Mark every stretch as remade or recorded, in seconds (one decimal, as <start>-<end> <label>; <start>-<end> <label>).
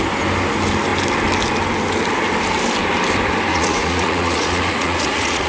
0.0-3.5 recorded; 3.5-5.5 remade